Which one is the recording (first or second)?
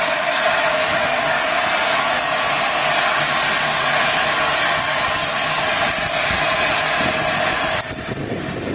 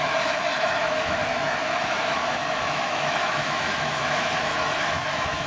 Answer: first